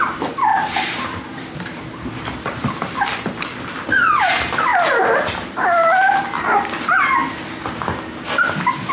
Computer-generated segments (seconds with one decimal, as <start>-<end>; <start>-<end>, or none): 0.5-3.6; 4.7-5.3